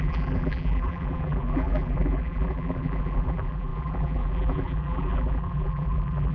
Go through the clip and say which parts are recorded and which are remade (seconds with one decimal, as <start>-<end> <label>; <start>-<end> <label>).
0.0-6.3 remade